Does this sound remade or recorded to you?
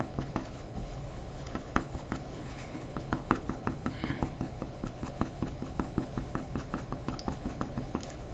remade